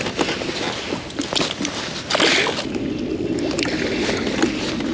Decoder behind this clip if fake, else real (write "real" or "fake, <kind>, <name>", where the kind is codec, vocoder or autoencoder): real